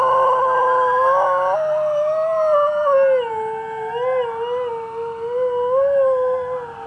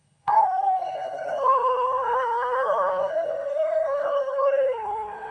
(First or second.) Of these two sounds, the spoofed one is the second